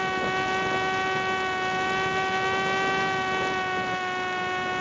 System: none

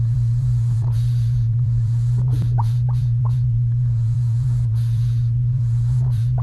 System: vocoder, Vocos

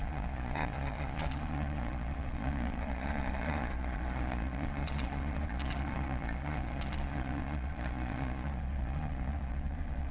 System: vocoder, Vocos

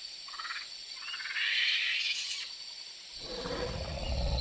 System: vocoder, Vocos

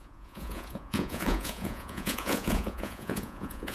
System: vocoder, Vocos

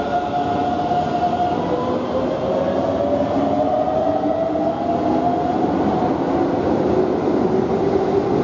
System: none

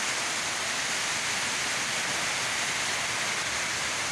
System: none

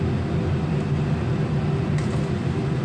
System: none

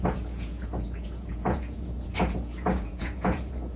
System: vocoder, Vocos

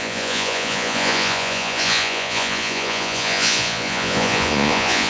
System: vocoder, Vocos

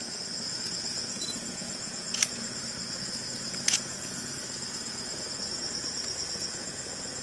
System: vocoder, Vocos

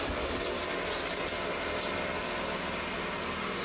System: none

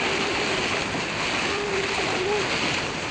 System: none